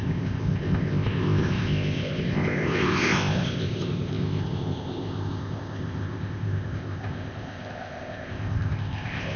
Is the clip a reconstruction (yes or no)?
yes